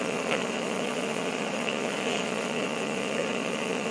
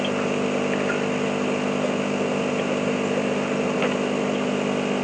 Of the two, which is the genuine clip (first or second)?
second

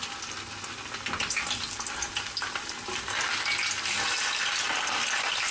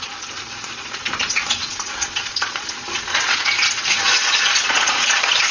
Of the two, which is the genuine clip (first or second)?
first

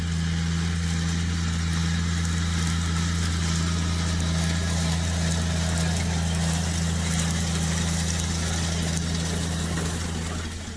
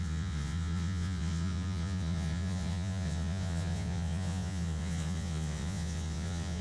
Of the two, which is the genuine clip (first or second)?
first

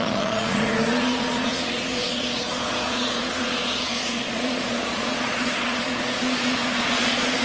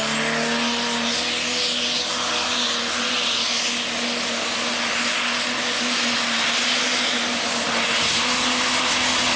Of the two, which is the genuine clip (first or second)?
second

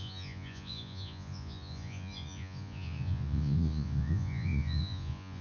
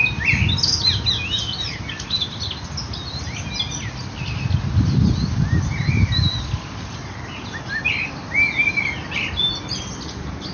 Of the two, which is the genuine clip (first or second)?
second